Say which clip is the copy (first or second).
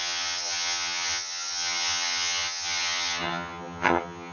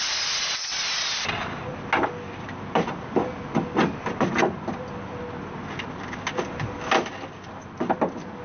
first